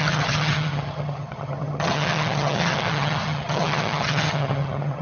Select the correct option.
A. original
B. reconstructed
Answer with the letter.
B